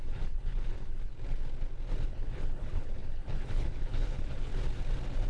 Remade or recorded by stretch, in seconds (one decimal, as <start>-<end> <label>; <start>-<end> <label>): 0.0-1.1 remade; 1.1-2.1 recorded; 2.1-4.5 remade; 4.5-5.3 recorded